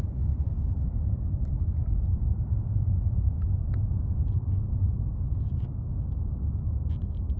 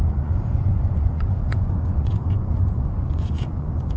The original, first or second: first